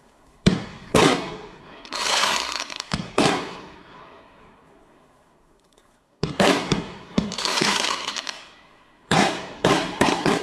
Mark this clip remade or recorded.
remade